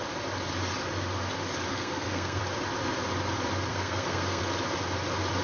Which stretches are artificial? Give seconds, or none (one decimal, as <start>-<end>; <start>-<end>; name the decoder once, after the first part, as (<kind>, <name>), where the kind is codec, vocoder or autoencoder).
1.7-2.4 (codec, SNAC); 3.7-4.4